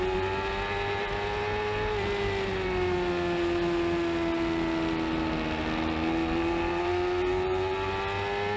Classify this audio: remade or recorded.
recorded